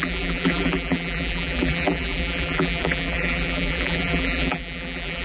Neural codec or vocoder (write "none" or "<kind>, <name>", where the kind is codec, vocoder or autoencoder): vocoder, BigVGAN v2